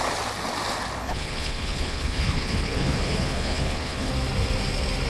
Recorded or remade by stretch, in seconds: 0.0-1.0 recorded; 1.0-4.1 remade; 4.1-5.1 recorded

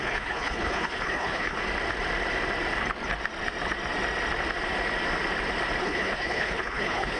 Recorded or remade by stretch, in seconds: 0.0-1.6 remade; 1.6-5.8 recorded; 5.8-7.2 remade

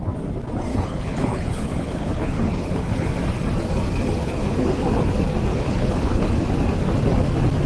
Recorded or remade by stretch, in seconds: 0.0-0.7 recorded; 0.7-3.1 remade; 3.1-4.2 recorded; 4.2-5.1 remade; 5.1-5.5 recorded; 5.5-6.4 remade; 6.4-7.7 recorded